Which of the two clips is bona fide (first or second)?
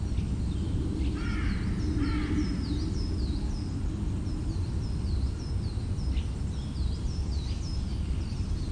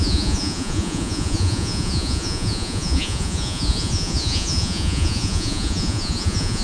first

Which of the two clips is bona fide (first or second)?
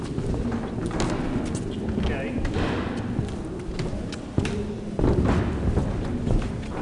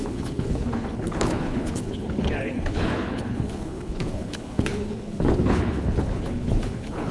first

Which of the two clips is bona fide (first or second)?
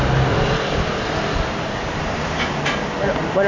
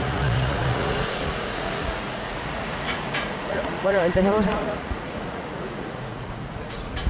first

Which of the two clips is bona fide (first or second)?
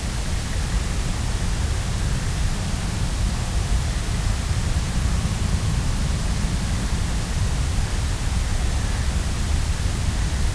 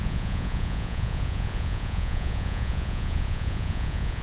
first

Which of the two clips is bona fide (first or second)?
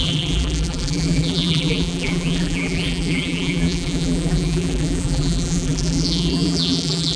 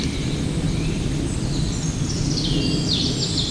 second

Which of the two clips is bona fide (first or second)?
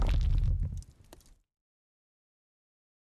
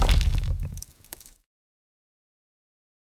first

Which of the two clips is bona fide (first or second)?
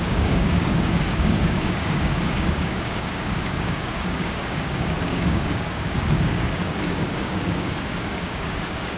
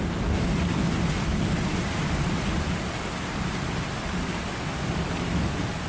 second